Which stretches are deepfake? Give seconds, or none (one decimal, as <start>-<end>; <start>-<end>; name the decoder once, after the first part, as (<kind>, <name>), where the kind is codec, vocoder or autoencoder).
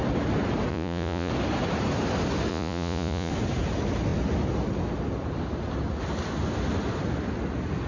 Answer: 0.7-1.3 (vocoder, Vocos); 2.5-3.3